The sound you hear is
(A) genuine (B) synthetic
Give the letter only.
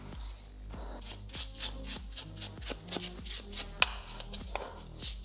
A